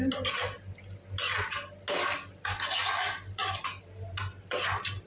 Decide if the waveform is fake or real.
real